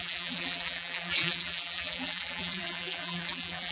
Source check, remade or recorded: remade